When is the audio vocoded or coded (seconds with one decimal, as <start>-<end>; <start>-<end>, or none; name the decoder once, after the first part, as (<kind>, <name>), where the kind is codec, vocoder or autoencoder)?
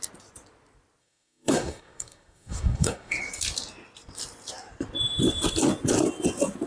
1.0-3.2 (codec, SNAC)